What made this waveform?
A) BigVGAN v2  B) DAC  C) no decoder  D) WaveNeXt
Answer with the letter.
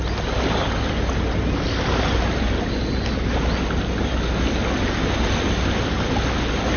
C